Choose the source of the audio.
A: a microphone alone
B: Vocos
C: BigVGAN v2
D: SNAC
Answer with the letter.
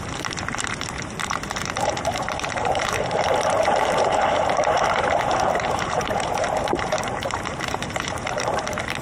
C